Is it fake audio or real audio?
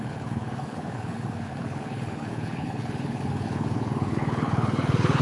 fake